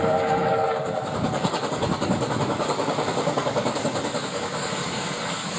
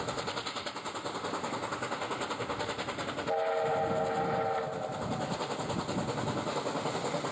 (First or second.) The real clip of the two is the second